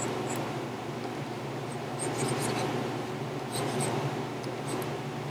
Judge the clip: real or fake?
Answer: real